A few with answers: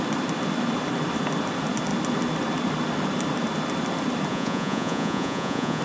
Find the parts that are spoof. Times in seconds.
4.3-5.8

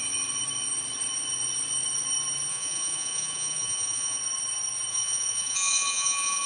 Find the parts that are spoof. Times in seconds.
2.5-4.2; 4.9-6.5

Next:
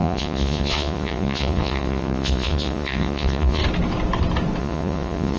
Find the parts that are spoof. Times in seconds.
0.0-3.6; 4.6-5.4

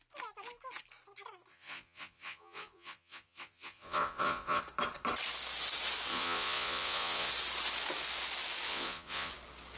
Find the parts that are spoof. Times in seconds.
1.5-4.6; 6.1-7.3; 8.7-9.3

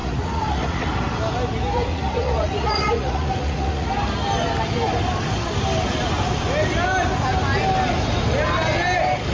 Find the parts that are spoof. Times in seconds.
0.0-0.9; 1.9-3.9

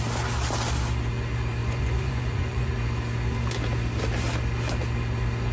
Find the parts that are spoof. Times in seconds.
1.6-2.7